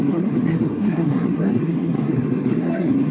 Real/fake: fake